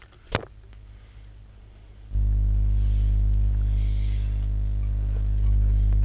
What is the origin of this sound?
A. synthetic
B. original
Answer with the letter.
B